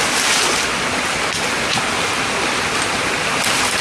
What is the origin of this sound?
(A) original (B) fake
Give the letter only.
A